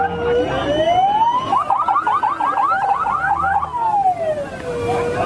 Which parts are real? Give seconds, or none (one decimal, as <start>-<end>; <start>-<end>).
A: 0.0-5.3